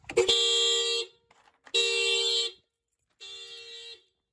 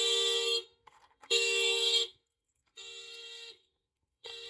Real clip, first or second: first